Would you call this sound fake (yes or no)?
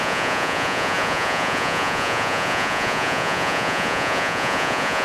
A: yes